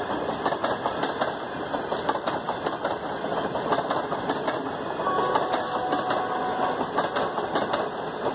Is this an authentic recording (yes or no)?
yes